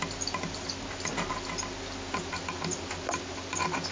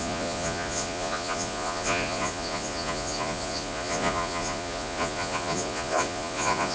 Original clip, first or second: first